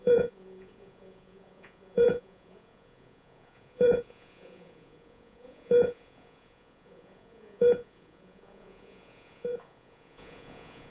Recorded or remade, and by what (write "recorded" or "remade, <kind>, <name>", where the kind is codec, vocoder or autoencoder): remade, vocoder, Vocos